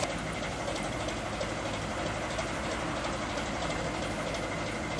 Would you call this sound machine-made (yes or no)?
no